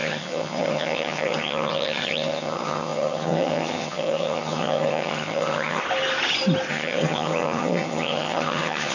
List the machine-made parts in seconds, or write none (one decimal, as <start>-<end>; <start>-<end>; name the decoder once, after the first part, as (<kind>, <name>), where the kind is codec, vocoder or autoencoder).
0.0-5.8 (vocoder, HiFi-GAN); 6.7-8.9